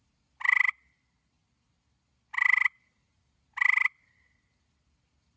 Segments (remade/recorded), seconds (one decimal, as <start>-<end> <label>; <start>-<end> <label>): 0.0-5.4 recorded